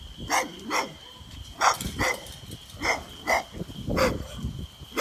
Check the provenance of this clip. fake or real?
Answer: real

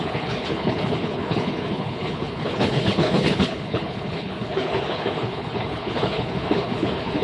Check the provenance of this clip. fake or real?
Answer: fake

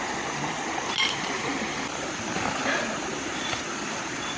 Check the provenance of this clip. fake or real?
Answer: real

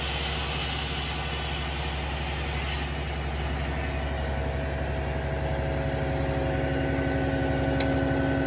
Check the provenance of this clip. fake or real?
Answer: real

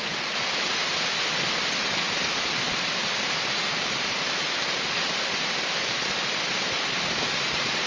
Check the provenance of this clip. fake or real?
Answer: fake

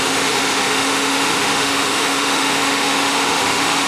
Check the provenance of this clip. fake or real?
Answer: fake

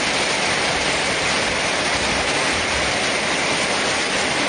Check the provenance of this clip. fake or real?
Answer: real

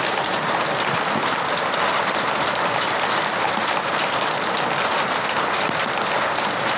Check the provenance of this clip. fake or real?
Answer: real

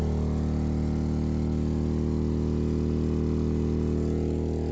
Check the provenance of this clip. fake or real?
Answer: real